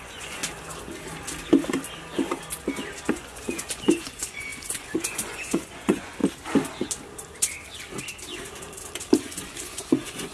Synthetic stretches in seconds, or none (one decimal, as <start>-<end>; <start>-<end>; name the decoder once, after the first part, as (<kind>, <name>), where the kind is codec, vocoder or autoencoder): 0.0-0.4 (vocoder, Vocos); 3.1-6.2; 9.2-10.3